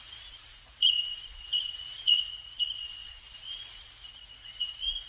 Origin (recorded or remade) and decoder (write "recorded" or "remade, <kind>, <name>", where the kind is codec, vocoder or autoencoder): remade, vocoder, Vocos